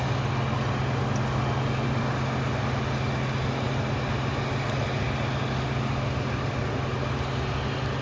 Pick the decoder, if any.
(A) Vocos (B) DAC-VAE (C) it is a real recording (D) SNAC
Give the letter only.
C